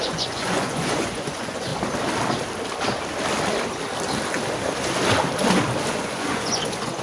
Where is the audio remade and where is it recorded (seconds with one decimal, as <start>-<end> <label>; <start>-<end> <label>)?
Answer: 0.0-1.7 remade; 1.7-5.9 recorded; 5.9-7.0 remade